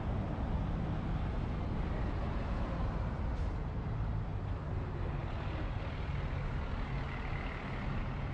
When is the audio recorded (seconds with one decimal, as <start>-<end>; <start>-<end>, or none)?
0.0-8.3